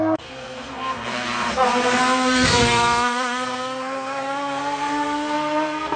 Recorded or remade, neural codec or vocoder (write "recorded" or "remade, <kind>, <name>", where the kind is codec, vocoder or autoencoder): remade, codec, SNAC